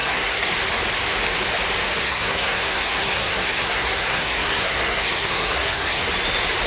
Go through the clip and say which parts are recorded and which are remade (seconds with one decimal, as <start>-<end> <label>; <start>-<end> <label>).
0.0-0.5 remade; 0.5-2.0 recorded; 2.0-6.0 remade; 6.0-6.7 recorded